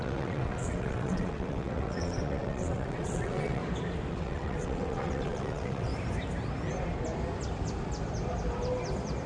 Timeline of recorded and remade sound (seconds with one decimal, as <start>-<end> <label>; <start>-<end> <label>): 0.0-3.6 remade; 3.6-4.1 recorded; 4.1-5.9 remade; 5.9-9.3 recorded

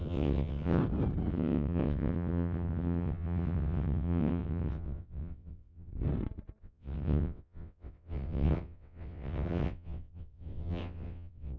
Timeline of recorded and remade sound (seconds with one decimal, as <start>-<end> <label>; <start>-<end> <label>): 0.0-0.8 remade; 0.8-1.3 recorded; 1.3-5.9 remade; 5.9-6.6 recorded; 6.6-11.6 remade

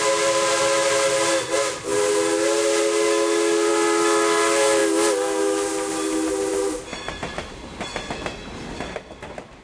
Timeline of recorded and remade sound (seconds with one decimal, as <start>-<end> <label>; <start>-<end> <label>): 0.0-9.6 recorded